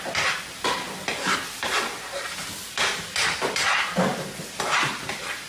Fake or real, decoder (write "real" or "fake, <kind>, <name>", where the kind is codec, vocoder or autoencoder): real